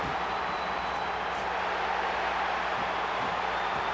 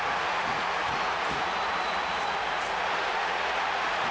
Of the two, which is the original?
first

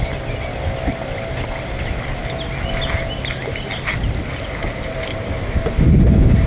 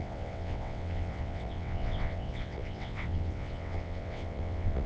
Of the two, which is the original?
first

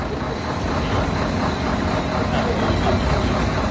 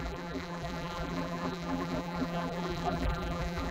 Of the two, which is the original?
first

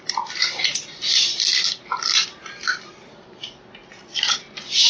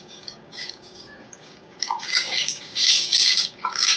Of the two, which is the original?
first